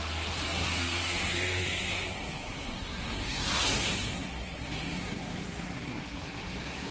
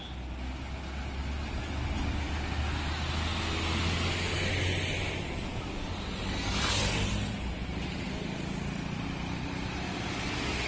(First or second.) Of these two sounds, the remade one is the first